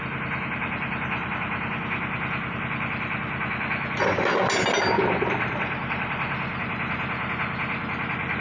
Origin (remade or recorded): recorded